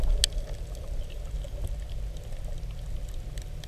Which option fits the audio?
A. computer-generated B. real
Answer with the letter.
B